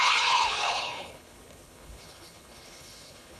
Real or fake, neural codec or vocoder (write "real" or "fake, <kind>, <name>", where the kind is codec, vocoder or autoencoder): fake, codec, HILCodec